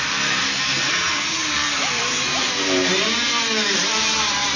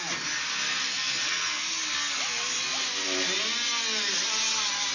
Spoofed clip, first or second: first